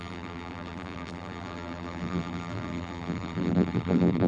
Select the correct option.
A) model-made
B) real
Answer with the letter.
A